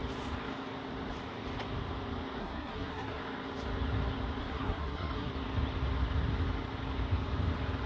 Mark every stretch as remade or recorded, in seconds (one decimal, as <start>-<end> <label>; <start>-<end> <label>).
0.0-2.4 recorded; 2.4-3.2 remade; 3.2-4.4 recorded; 4.4-5.3 remade; 5.3-7.9 recorded